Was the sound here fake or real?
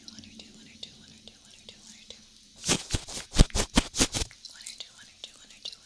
real